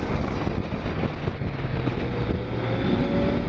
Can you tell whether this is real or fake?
real